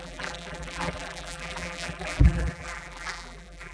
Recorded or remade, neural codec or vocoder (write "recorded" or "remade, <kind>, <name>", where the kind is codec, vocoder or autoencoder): remade, vocoder, BigVGAN v2